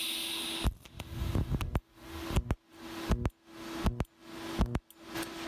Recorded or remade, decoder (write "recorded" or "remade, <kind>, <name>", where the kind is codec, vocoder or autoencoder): recorded